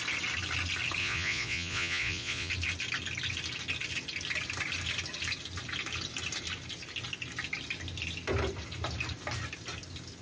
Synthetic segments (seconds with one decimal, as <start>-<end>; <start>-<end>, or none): 1.0-2.5